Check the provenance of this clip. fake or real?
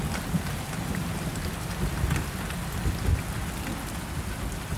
real